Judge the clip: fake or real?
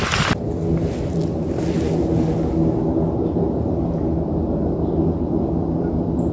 real